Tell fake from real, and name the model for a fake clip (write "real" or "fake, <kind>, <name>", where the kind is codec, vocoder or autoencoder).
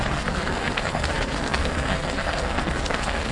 fake, codec, SNAC